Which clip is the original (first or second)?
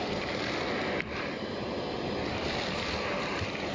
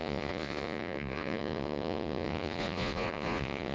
first